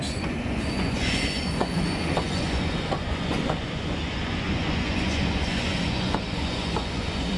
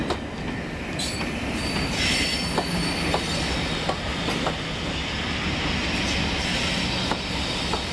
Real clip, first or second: second